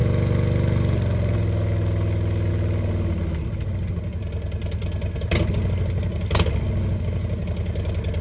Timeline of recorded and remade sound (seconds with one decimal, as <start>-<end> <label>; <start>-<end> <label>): 0.0-8.2 recorded